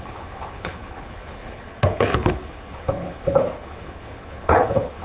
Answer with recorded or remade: remade